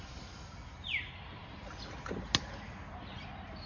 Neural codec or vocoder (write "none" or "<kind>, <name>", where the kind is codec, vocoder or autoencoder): none